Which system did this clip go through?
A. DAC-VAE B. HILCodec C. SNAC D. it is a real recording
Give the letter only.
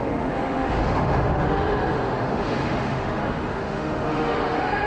A